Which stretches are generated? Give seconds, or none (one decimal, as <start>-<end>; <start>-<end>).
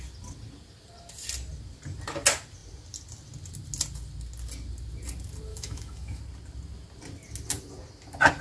5.5-6.2